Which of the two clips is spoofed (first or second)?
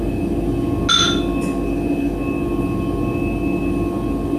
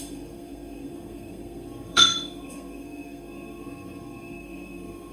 second